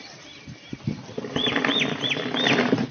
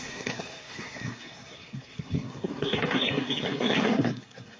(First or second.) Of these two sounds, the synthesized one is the second